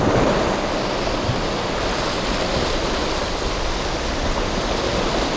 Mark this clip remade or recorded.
recorded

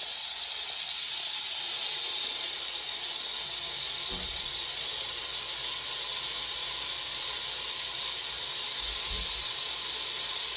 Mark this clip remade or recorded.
recorded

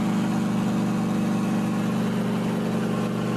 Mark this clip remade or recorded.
recorded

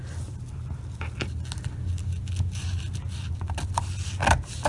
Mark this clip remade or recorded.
recorded